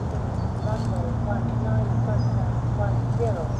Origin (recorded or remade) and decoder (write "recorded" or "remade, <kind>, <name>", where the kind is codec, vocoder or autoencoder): recorded